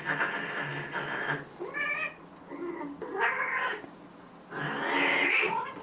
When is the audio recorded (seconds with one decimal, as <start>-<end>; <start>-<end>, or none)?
0.0-5.8